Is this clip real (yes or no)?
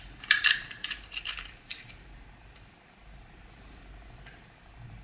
no